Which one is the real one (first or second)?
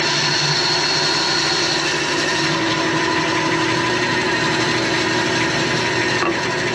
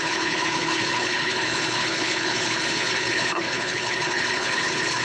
first